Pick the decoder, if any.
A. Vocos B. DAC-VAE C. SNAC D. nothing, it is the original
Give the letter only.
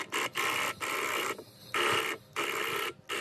D